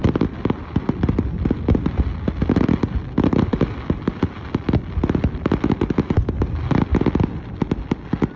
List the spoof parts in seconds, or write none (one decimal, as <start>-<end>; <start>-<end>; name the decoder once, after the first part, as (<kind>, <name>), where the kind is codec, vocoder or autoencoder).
none